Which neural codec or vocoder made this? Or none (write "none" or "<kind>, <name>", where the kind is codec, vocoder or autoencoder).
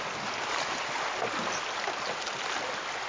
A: none